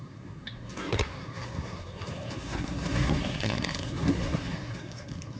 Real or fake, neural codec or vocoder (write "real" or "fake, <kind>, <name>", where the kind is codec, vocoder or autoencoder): fake, codec, SNAC